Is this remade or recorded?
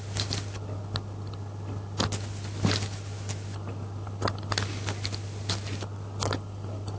recorded